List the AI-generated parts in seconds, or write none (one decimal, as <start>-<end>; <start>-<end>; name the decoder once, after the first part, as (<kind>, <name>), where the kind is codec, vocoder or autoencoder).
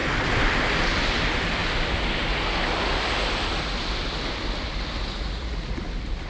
5.0-5.7 (vocoder, Vocos)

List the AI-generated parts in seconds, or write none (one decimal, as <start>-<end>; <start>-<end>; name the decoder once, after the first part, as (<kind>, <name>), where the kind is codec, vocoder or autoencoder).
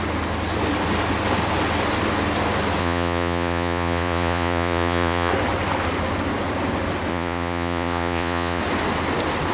2.8-5.3 (vocoder, Vocos); 7.1-8.6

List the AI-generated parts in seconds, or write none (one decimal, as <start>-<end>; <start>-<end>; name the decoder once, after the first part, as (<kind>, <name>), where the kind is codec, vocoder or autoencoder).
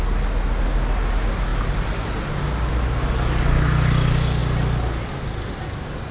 none